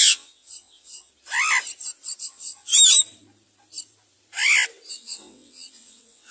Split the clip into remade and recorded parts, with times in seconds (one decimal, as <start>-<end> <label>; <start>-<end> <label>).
0.0-1.1 remade; 1.1-2.2 recorded; 2.2-2.7 remade; 2.7-4.9 recorded; 4.9-6.3 remade